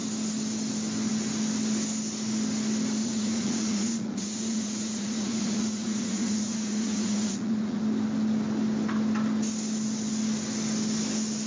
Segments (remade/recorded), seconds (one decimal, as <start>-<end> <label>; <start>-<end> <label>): 0.0-3.0 recorded; 3.0-7.8 remade; 7.8-11.5 recorded